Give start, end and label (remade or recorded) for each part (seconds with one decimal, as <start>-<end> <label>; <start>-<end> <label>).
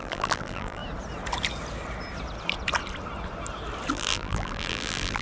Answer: 0.0-0.8 remade; 0.8-3.9 recorded; 3.9-5.2 remade